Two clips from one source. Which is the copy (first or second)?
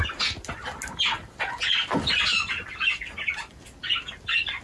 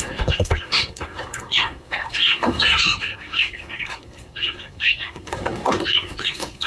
second